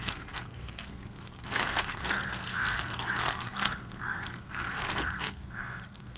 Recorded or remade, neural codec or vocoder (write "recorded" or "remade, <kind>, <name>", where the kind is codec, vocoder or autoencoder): remade, codec, SNAC